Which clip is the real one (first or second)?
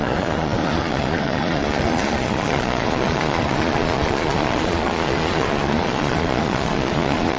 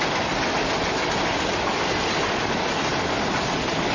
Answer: second